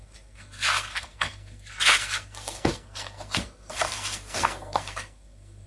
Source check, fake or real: fake